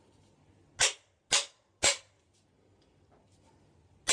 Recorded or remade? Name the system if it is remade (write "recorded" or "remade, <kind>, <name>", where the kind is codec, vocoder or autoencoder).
recorded